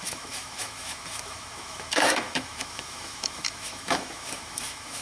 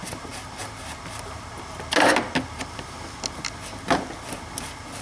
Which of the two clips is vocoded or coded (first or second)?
first